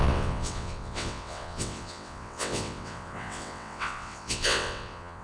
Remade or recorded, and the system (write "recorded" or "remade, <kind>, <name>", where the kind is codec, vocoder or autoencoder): remade, vocoder, WaveNeXt